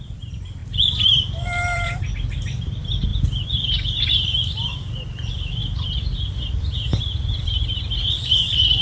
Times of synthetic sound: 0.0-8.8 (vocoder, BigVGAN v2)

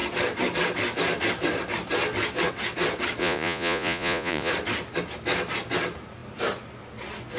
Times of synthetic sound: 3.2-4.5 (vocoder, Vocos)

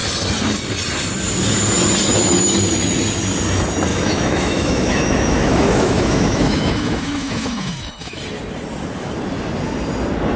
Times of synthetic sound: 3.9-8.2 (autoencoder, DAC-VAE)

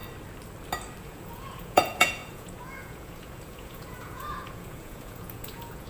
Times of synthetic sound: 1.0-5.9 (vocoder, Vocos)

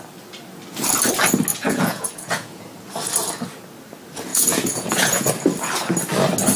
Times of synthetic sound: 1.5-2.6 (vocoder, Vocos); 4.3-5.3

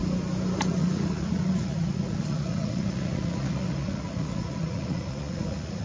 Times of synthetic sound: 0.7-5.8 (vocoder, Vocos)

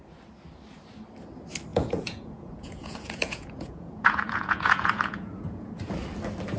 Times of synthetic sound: 1.7-5.7 (vocoder, Vocos)